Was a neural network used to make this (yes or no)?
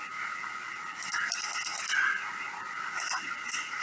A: no